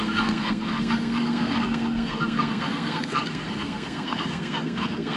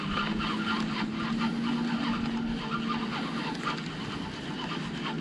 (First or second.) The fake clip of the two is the first